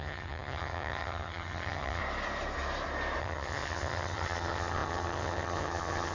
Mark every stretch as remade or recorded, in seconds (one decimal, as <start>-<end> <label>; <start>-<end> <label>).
0.0-2.0 remade; 2.0-3.2 recorded; 3.2-6.1 remade

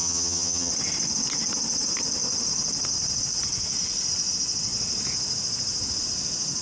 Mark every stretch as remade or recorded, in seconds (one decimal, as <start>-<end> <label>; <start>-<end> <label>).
0.0-0.7 remade; 0.7-6.6 recorded

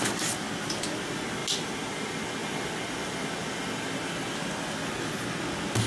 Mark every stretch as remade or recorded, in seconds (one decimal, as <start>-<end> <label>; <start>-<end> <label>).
0.0-5.9 recorded

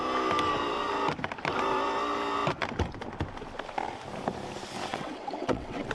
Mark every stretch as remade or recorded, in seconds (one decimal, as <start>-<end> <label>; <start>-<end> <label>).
0.0-4.9 recorded; 4.9-5.9 remade

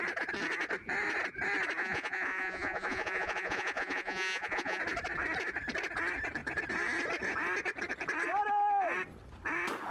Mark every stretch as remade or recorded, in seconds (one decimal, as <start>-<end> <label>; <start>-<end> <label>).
0.0-1.8 recorded; 1.8-4.8 remade; 4.8-9.9 recorded

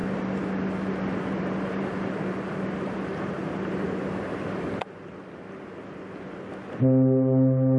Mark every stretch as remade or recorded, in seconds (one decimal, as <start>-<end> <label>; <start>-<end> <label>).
0.0-7.8 recorded

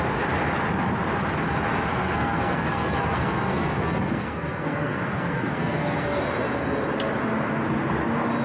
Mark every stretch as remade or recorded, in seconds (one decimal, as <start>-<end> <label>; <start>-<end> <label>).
0.0-1.9 recorded; 1.9-6.2 remade; 6.2-8.4 recorded